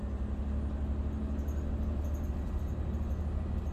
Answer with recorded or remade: recorded